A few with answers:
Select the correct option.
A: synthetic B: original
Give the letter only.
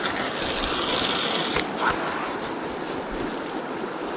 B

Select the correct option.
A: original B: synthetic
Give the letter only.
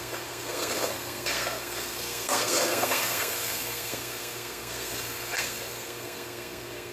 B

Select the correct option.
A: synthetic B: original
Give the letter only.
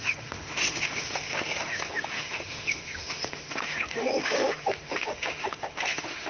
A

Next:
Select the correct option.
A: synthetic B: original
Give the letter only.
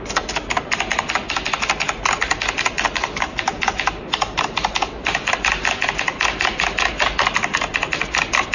B